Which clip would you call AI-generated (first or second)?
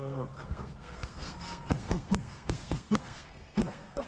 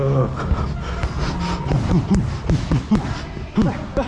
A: first